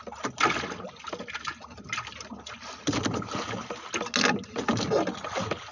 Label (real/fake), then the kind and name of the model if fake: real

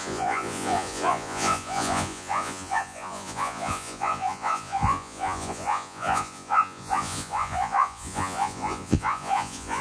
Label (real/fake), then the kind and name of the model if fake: fake, vocoder, Vocos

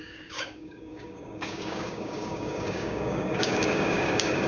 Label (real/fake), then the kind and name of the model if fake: fake, codec, DAC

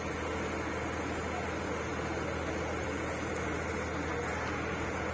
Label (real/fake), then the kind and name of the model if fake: real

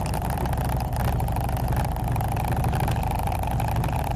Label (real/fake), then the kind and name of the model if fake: real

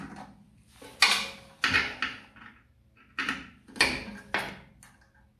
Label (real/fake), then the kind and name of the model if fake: real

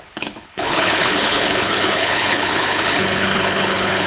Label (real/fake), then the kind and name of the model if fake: fake, codec, HILCodec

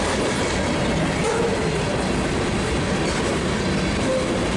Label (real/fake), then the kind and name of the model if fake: real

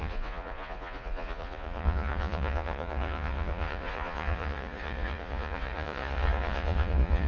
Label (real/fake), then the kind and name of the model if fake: fake, vocoder, Vocos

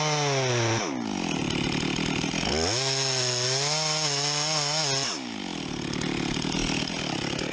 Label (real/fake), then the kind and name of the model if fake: real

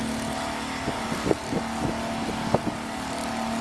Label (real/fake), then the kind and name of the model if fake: real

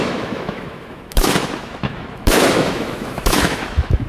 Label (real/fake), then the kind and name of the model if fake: fake, autoencoder, DAC-VAE